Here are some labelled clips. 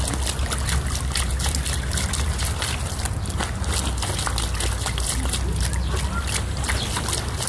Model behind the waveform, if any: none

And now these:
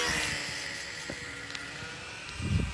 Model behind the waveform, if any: none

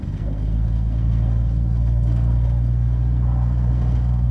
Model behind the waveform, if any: codec, SNAC